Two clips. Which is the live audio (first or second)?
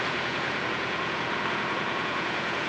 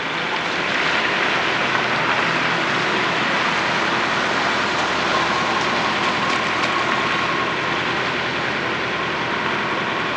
second